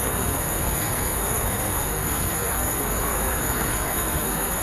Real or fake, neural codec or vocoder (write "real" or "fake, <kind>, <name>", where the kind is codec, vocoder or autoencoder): fake, codec, SNAC